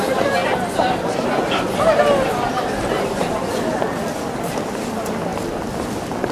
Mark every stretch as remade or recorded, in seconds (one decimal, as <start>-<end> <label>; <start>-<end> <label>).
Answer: 0.0-6.3 recorded